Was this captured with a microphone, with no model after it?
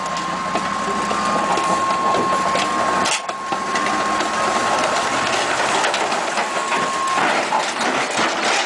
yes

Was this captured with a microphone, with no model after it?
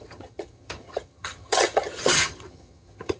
no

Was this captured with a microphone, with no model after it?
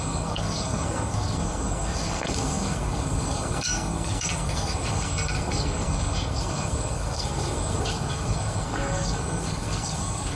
no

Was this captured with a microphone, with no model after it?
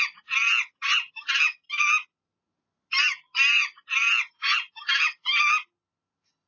yes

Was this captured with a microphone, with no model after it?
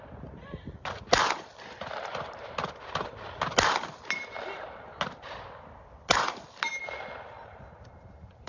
yes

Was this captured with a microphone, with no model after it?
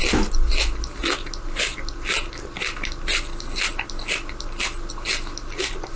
yes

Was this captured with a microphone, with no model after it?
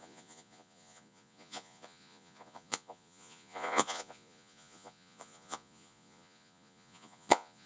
no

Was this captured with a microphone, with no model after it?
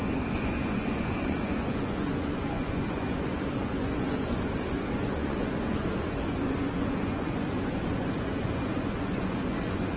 no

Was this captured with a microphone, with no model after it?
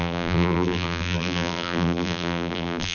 no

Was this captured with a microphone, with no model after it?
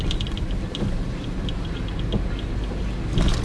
yes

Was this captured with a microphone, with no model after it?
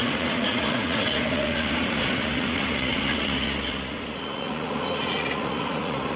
no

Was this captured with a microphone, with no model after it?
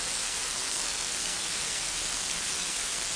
no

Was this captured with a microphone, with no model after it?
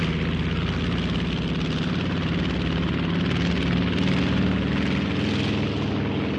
yes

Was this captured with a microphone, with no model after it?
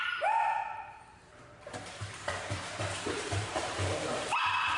no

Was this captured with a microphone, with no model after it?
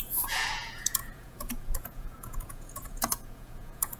no